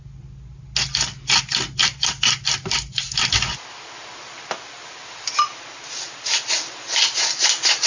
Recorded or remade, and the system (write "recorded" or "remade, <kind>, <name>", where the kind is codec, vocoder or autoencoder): recorded